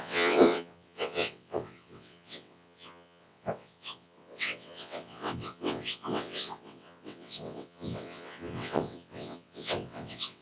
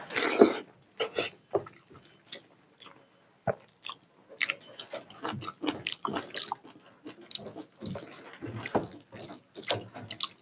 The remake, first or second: first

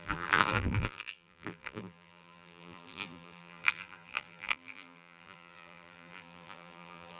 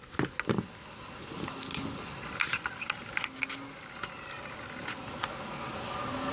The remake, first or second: first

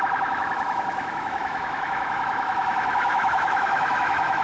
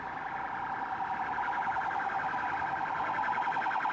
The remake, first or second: first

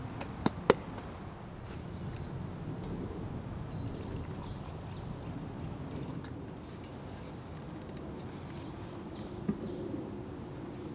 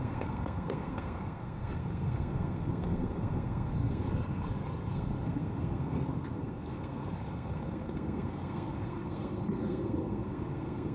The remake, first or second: second